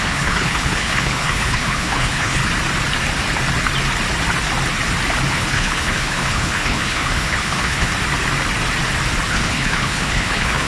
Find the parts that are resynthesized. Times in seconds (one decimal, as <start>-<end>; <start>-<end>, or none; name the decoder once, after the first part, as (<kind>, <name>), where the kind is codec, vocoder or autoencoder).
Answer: 0.0-2.4 (codec, HILCodec); 5.3-7.9; 9.3-10.7